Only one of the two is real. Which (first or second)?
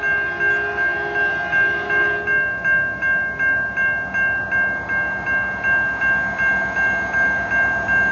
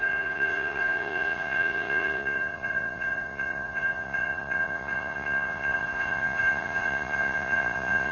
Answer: first